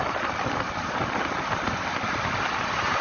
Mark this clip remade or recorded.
recorded